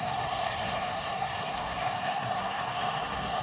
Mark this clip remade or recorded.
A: remade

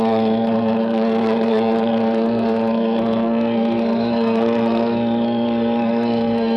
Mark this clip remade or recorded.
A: remade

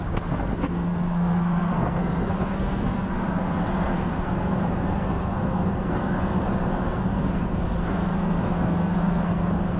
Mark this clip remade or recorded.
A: remade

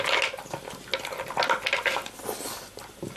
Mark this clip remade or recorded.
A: recorded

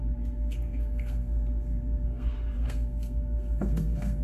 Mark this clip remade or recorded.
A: remade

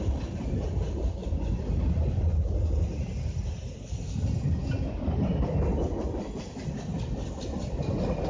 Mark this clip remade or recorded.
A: recorded